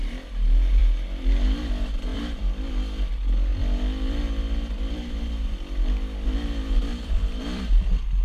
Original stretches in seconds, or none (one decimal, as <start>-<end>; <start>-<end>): 0.0-2.1; 2.7-3.5